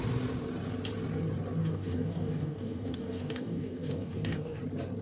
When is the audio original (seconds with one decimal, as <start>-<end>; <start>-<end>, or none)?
0.0-1.6; 4.6-5.0